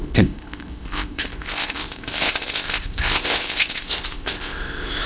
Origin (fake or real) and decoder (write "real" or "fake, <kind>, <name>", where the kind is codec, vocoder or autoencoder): fake, codec, ZipCodec